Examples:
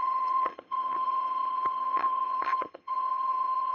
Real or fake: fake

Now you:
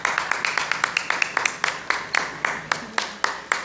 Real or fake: real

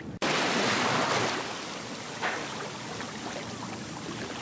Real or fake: real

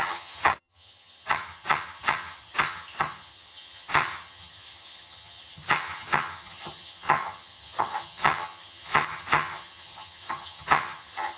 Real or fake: fake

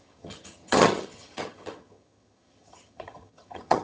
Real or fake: fake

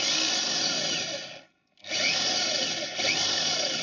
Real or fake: real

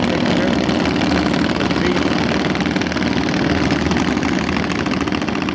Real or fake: real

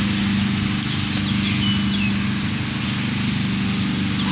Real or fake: real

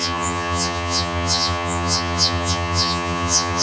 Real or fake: fake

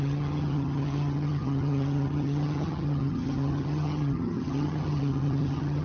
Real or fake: fake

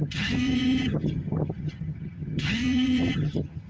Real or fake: fake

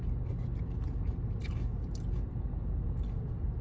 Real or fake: real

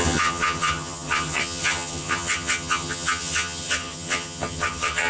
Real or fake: fake